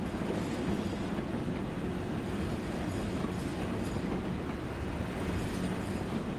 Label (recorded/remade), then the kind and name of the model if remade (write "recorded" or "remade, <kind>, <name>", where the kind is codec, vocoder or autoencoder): recorded